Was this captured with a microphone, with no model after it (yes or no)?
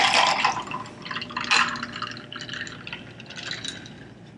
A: yes